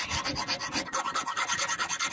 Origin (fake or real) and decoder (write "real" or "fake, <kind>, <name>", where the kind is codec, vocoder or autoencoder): real